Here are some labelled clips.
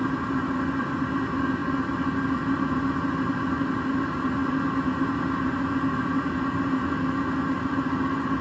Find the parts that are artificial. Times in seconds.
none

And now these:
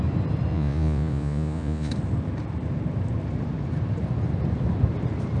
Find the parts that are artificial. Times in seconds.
0.5-1.9 (vocoder, Vocos)

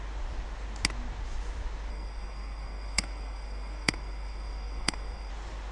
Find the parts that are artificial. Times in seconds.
1.9-5.3 (codec, SNAC)

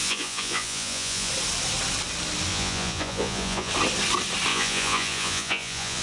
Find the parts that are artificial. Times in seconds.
0.0-1.3 (vocoder, Vocos); 2.5-3.7; 4.5-6.0

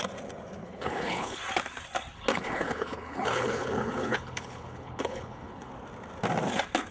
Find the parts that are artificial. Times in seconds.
0.6-1.4 (codec, HILCodec); 2.3-5.7